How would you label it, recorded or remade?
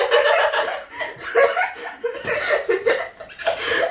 recorded